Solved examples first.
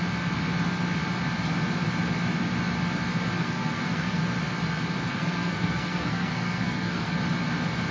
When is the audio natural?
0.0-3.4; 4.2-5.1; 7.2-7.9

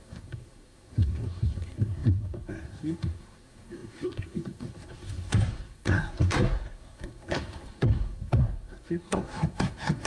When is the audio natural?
none

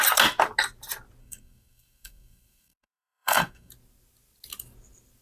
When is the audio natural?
0.0-1.2; 3.7-5.2

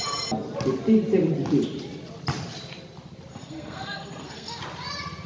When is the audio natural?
0.0-3.3; 4.6-5.3